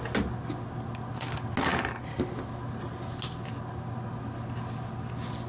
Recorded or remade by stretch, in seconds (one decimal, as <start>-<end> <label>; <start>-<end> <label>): 0.0-5.5 recorded

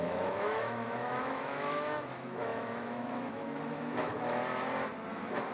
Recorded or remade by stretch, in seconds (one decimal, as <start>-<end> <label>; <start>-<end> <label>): 0.0-4.4 remade; 4.4-5.1 recorded; 5.1-5.5 remade

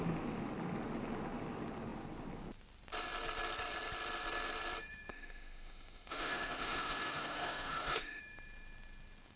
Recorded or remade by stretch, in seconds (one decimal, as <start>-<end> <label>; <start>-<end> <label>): 0.0-5.1 recorded; 5.1-8.2 remade; 8.2-9.4 recorded